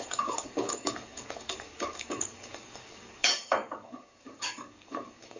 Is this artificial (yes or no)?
yes